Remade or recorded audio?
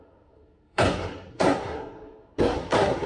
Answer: remade